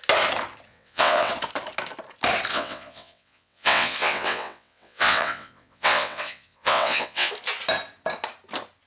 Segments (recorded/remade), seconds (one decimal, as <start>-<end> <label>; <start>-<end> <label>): 0.0-0.7 recorded; 0.7-1.3 remade; 1.3-2.5 recorded; 2.5-7.3 remade; 7.3-8.9 recorded